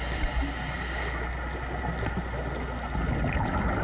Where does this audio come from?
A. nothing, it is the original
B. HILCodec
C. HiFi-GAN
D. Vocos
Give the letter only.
A